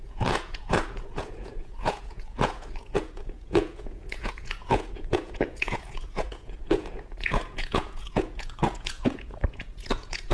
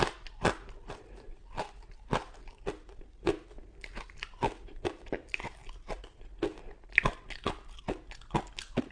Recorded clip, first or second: second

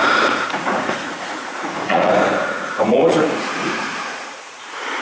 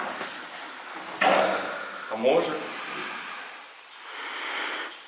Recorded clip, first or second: second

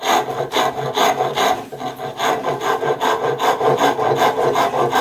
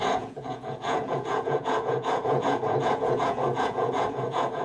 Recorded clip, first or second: first